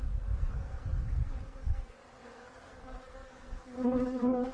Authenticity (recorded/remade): remade